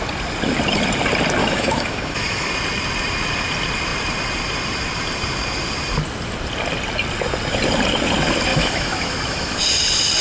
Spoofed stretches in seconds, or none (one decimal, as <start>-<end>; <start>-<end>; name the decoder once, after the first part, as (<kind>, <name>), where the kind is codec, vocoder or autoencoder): 1.4-2.5 (autoencoder, DAC-VAE); 8.5-9.6